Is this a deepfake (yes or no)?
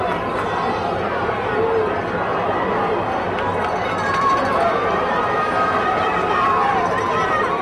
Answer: yes